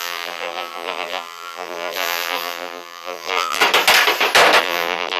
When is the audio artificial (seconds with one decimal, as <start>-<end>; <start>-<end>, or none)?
0.0-3.6; 4.6-5.2